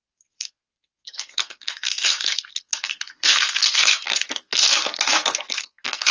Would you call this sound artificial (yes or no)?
yes